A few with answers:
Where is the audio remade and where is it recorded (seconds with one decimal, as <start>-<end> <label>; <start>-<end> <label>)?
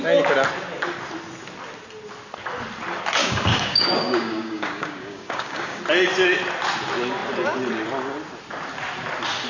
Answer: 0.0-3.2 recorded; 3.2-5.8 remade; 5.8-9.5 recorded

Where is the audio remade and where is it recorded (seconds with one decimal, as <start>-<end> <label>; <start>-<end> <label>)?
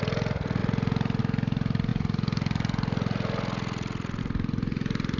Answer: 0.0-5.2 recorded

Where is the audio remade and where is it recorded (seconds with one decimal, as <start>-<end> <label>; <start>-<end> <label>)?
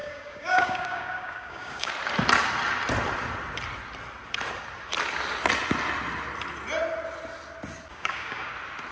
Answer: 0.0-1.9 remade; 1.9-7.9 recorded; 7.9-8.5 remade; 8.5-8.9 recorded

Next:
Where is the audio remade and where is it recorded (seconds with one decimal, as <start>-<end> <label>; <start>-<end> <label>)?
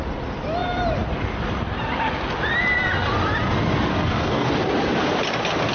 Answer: 0.0-3.9 recorded; 3.9-4.5 remade; 4.5-5.7 recorded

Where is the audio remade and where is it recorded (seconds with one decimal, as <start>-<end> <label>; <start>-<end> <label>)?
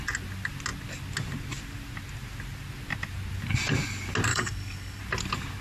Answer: 0.0-4.3 recorded; 4.3-5.0 remade; 5.0-5.6 recorded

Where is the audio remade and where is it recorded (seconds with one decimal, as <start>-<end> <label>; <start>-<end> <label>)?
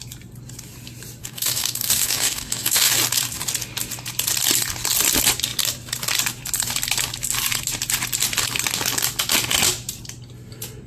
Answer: 0.0-1.2 recorded; 1.2-2.9 remade; 2.9-10.9 recorded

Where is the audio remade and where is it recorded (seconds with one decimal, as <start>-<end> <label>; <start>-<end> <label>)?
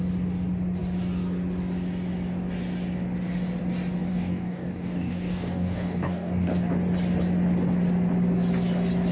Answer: 0.0-4.1 recorded; 4.1-6.7 remade; 6.7-9.1 recorded